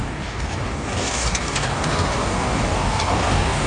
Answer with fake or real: fake